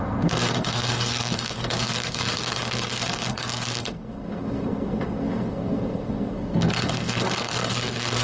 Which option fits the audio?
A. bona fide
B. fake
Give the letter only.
B